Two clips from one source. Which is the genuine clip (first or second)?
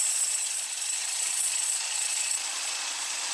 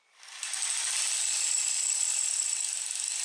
second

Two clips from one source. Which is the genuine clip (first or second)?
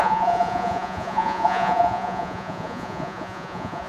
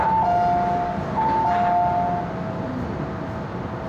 second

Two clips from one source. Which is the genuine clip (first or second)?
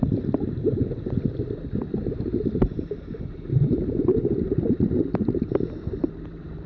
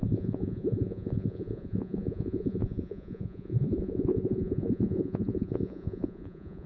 first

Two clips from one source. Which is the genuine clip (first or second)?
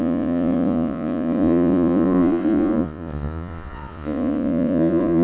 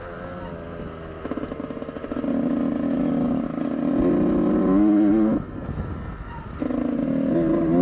second